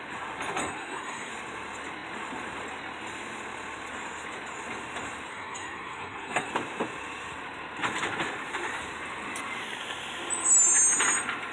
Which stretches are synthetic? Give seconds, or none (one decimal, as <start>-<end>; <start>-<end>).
0.6-1.3; 5.3-6.5